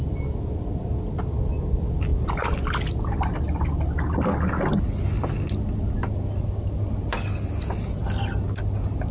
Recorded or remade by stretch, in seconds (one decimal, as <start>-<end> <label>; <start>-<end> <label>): 0.0-9.1 recorded